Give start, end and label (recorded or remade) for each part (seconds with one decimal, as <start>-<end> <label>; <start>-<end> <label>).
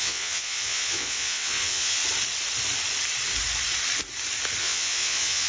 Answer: 0.0-2.0 remade; 2.0-4.6 recorded; 4.6-5.5 remade